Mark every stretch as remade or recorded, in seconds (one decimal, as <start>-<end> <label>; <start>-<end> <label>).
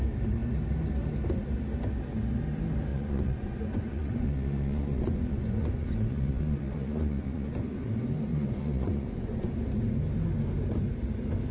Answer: 0.0-2.9 recorded; 2.9-7.9 remade; 7.9-8.3 recorded; 8.3-9.5 remade; 9.5-11.5 recorded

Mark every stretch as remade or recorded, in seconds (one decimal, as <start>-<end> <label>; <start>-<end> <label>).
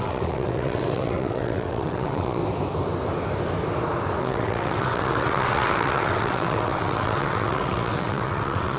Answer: 0.0-2.4 remade; 2.4-4.2 recorded; 4.2-8.8 remade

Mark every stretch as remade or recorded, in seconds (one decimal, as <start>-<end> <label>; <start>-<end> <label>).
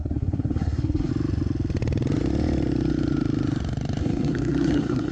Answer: 0.0-1.1 remade; 1.1-4.0 recorded; 4.0-5.1 remade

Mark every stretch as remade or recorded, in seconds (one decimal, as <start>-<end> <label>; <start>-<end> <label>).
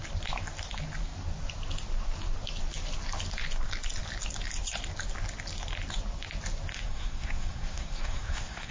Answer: 0.0-6.7 recorded; 6.7-8.7 remade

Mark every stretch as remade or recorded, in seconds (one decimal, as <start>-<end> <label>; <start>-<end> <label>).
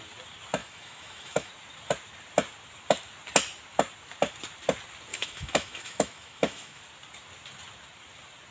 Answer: 0.0-0.6 recorded; 0.6-1.5 remade; 1.5-5.1 recorded; 5.1-6.8 remade; 6.8-8.5 recorded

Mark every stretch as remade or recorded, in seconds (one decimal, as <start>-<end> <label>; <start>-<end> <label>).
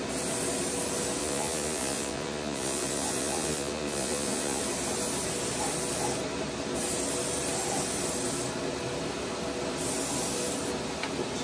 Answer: 0.0-1.2 recorded; 1.2-4.6 remade; 4.6-11.4 recorded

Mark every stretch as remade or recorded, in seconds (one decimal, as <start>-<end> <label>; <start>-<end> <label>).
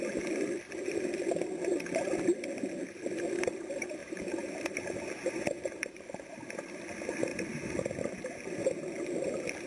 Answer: 0.0-4.0 recorded; 4.0-6.8 remade; 6.8-7.3 recorded; 7.3-7.9 remade; 7.9-9.7 recorded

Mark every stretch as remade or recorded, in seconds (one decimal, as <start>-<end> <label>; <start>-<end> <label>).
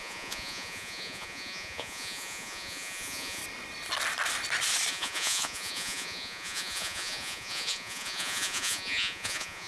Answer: 0.0-3.4 remade; 3.4-4.9 recorded; 4.9-9.7 remade